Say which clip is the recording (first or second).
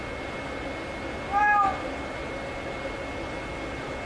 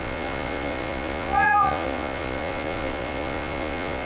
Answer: first